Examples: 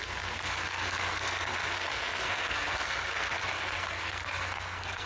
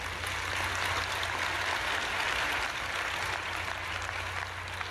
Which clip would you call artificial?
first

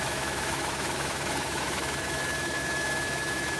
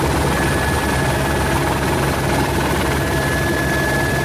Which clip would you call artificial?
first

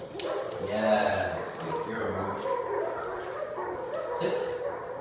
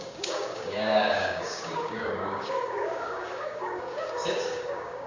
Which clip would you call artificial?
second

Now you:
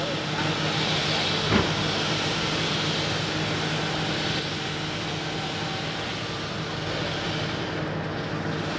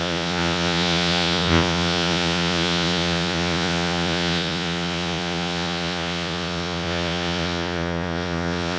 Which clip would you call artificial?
second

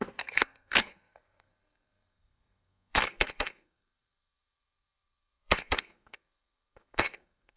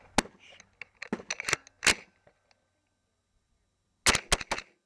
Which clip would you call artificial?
first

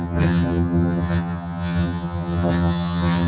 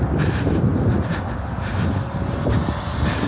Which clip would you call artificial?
first